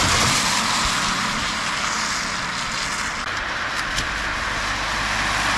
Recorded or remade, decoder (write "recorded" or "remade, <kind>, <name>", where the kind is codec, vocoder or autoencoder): recorded